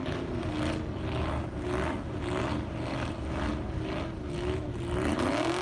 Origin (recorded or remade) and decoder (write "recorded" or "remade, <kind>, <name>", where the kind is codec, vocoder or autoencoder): recorded